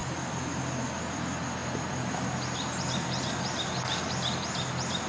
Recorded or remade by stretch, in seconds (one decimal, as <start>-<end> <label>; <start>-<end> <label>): 0.0-5.1 recorded